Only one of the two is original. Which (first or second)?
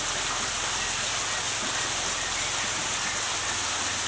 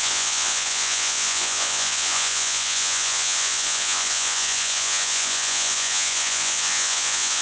first